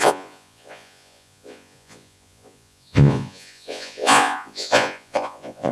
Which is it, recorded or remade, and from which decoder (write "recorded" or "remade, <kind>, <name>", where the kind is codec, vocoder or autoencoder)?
remade, vocoder, Vocos